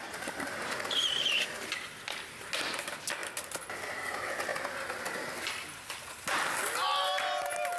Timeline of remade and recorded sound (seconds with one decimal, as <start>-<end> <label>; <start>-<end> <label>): 0.0-7.8 recorded

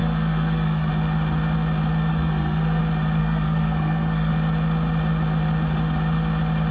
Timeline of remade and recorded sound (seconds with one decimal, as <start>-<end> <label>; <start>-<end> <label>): 0.0-0.9 remade; 0.9-2.1 recorded; 2.1-2.8 remade; 2.8-3.2 recorded; 3.2-4.3 remade; 4.3-6.7 recorded

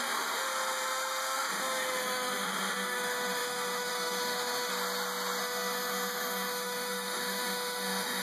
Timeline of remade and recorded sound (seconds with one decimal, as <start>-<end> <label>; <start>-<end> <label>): 0.0-4.7 remade; 4.7-5.4 recorded; 5.4-8.2 remade

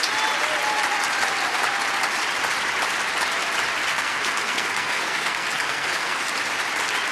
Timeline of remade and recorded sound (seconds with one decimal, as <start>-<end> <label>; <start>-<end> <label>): 0.0-3.9 recorded; 3.9-6.3 remade; 6.3-7.1 recorded

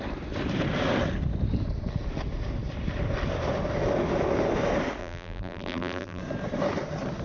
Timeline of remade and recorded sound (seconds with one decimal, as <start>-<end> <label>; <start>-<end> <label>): 0.0-5.0 recorded; 5.0-6.2 remade; 6.2-7.2 recorded

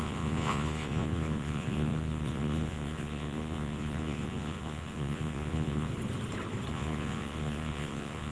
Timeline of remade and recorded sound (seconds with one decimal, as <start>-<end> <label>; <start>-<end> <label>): 0.0-5.9 remade; 5.9-6.7 recorded; 6.7-8.3 remade

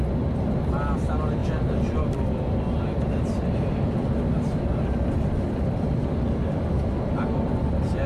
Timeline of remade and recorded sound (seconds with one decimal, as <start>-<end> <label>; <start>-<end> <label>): 0.0-8.1 recorded